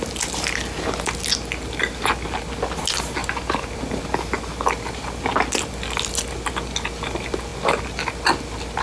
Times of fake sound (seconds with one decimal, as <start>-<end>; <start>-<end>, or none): 3.2-3.8